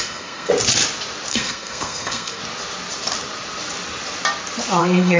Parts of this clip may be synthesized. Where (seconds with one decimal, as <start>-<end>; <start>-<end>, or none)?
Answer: 0.0-0.5; 1.3-2.4; 4.8-5.2